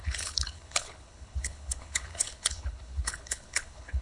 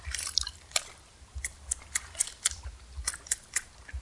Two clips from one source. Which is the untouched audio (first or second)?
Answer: second